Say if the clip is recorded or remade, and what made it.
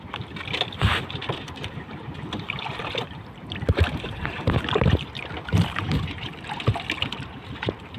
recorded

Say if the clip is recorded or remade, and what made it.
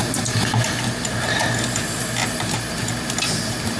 recorded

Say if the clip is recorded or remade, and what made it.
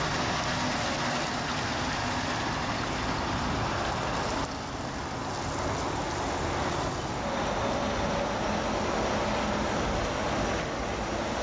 recorded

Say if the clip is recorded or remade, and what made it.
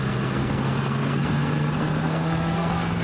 remade, codec, SNAC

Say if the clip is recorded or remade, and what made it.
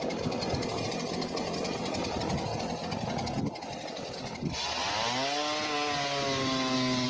recorded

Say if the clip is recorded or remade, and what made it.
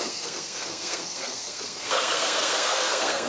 remade, codec, SNAC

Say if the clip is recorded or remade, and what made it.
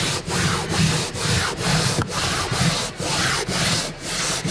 recorded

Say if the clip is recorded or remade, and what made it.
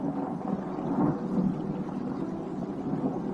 recorded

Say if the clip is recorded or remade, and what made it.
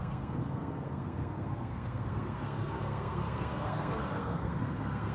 remade, codec, SNAC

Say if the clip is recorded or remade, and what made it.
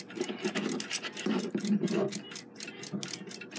recorded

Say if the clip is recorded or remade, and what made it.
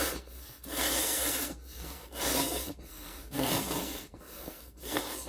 remade, codec, SNAC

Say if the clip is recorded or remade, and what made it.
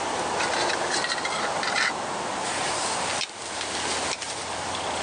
recorded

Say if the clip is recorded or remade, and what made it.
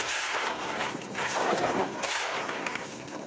remade, codec, SNAC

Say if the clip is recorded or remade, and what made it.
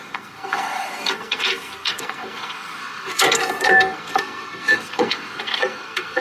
remade, codec, SNAC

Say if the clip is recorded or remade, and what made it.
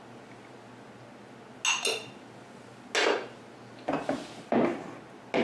recorded